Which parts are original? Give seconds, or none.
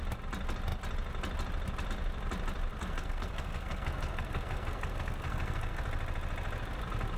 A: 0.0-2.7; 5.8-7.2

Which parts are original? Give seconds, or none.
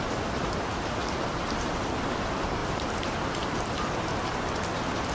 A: 0.0-1.0; 1.5-2.6; 3.9-5.1